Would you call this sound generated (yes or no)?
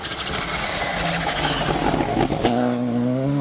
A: no